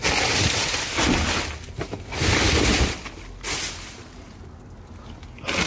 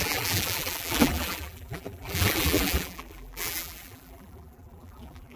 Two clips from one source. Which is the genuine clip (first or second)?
first